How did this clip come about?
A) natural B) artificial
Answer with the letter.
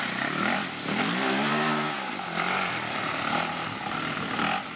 B